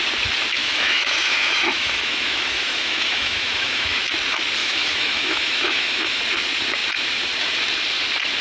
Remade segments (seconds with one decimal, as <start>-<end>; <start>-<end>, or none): 0.6-4.1; 4.6-6.2